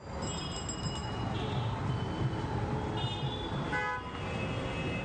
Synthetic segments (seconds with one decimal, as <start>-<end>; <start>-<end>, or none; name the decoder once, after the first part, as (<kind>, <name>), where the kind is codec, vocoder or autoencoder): none